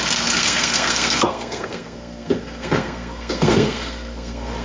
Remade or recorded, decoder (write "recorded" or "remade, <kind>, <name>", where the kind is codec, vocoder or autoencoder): remade, codec, SNAC